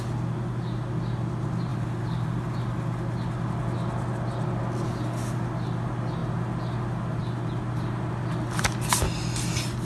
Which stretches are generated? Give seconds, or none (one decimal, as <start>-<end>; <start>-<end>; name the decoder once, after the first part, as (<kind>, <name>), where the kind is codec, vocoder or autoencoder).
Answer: 1.7-2.6 (vocoder, BigVGAN v2)